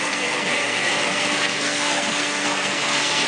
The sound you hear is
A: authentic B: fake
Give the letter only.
B